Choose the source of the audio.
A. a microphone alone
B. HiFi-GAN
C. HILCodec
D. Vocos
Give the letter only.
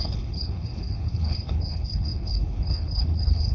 C